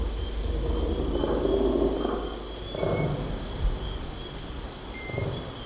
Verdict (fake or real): real